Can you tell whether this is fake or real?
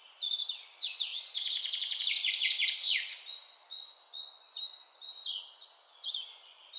fake